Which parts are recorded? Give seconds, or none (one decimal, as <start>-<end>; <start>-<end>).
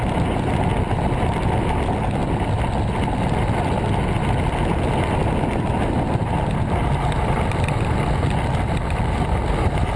0.0-10.0